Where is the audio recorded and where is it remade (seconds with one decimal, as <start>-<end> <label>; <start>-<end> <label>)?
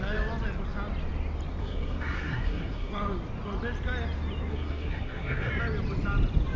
0.0-1.6 recorded; 1.6-2.9 remade; 2.9-4.5 recorded; 4.5-5.5 remade; 5.5-6.6 recorded